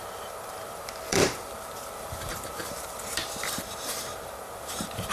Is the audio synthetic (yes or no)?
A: yes